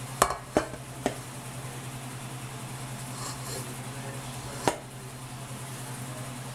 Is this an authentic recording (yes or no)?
yes